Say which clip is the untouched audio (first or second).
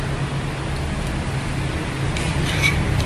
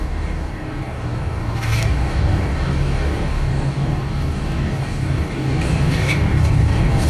first